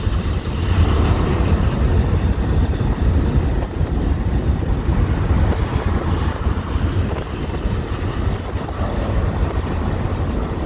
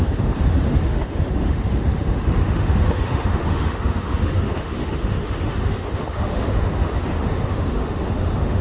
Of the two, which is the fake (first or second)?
second